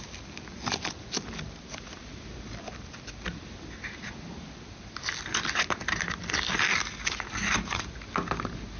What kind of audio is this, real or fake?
real